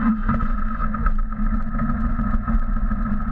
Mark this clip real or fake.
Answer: fake